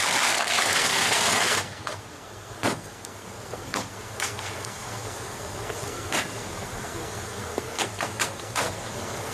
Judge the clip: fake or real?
fake